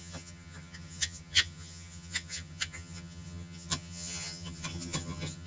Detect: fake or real fake